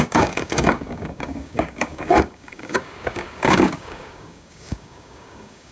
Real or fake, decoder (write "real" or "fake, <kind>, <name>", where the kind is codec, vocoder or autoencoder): fake, codec, DAC